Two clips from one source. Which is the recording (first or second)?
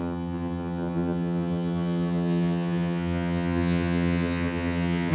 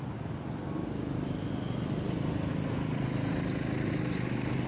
second